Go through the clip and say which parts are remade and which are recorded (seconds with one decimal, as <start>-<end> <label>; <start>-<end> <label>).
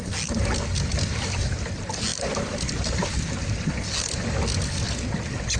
0.0-0.9 recorded; 0.9-1.7 remade; 1.7-2.1 recorded; 2.1-2.7 remade; 2.7-5.6 recorded